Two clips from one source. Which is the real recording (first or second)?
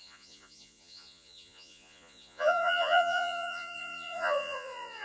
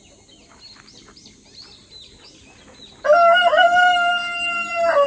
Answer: second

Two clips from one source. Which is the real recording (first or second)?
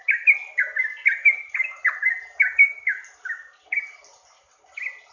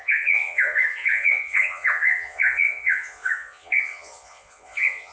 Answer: first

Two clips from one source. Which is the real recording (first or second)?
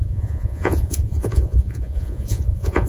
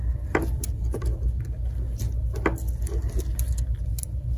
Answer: second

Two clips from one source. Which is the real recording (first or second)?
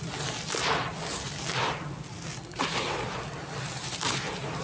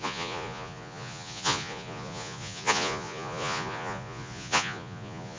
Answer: first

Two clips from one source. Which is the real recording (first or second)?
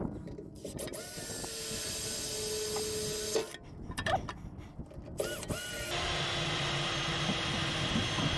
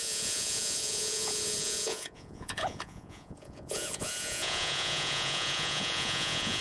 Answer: first